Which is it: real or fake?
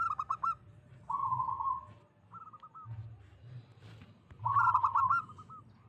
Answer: real